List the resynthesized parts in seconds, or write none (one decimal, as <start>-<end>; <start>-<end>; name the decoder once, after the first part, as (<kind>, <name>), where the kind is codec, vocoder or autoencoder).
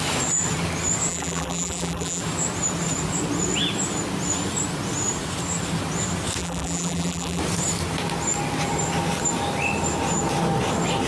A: 1.1-2.2 (vocoder, BigVGAN v2); 6.4-7.4